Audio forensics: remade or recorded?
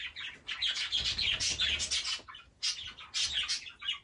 recorded